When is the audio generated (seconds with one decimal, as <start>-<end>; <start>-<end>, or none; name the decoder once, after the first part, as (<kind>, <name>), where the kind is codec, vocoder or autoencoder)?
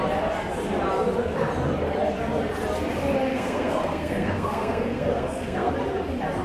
3.3-5.7 (codec, SNAC)